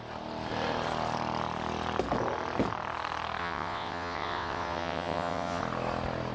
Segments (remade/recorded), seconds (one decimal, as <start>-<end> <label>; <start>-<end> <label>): 0.0-3.4 recorded; 3.4-5.6 remade; 5.6-6.3 recorded